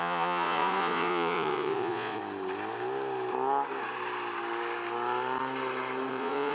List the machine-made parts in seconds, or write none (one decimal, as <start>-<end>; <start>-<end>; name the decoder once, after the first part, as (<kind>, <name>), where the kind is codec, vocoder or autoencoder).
0.0-2.2 (vocoder, Vocos); 6.1-6.5